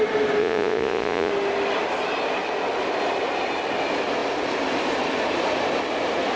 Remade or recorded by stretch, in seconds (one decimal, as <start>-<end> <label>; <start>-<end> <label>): 0.0-0.4 recorded; 0.4-1.3 remade; 1.3-6.4 recorded